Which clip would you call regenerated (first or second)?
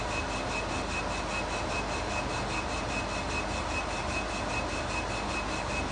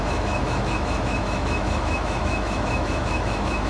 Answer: second